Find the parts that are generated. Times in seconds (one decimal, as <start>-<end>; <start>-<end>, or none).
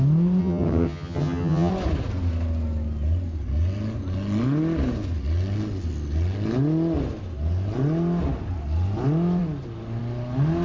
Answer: 0.4-1.7